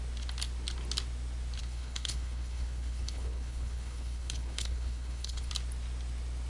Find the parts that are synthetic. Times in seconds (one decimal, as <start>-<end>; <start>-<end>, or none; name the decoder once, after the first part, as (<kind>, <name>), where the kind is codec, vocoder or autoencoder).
1.6-5.5 (codec, HILCodec)